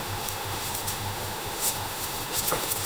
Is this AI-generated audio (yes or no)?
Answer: yes